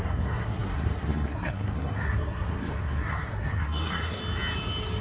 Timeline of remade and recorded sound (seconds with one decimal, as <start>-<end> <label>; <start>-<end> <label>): 0.0-4.2 remade; 4.2-5.0 recorded